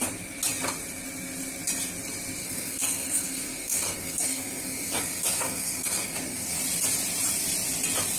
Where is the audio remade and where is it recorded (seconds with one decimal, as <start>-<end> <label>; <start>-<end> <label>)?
0.0-2.4 recorded; 2.4-6.6 remade; 6.6-8.2 recorded